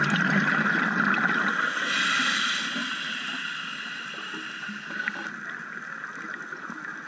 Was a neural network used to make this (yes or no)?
no